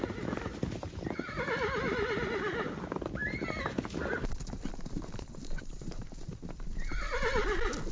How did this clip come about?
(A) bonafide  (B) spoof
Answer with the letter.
A